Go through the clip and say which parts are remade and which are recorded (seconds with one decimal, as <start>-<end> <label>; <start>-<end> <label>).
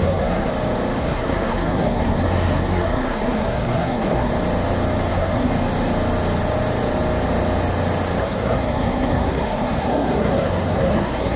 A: 0.0-0.5 remade; 0.5-1.0 recorded; 1.0-4.3 remade; 4.3-5.1 recorded; 5.1-5.5 remade; 5.5-8.2 recorded; 8.2-11.4 remade